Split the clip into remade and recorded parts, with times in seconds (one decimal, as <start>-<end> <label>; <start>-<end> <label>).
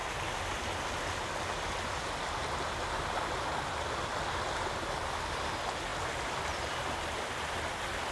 0.0-8.1 recorded